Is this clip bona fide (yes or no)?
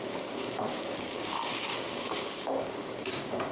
no